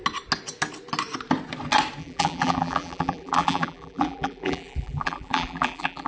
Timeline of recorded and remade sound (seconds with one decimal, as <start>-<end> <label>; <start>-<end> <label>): 0.0-2.0 recorded; 2.0-6.1 remade